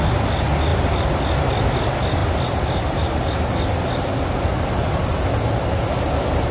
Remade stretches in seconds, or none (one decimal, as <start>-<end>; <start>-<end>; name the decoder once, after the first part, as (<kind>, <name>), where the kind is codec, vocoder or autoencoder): none